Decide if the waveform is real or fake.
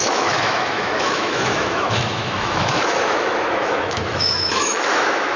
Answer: fake